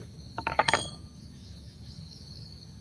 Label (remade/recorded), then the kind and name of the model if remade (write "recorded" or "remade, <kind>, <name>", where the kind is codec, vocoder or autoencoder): remade, codec, DAC